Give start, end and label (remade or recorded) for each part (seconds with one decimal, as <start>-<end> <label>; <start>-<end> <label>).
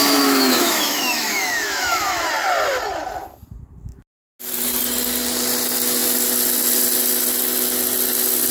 0.0-2.3 remade; 2.3-8.5 recorded